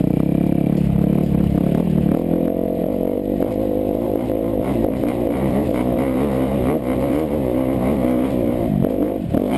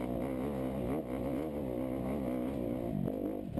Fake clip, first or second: first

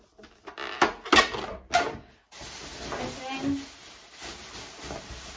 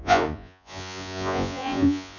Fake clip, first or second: second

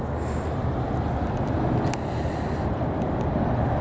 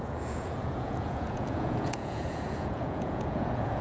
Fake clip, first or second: second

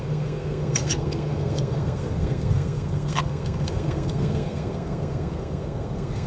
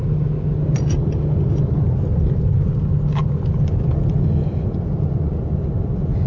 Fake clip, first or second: first